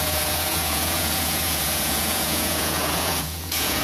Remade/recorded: remade